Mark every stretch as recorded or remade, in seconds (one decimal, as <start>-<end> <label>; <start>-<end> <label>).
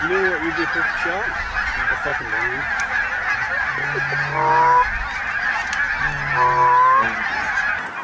0.0-8.0 recorded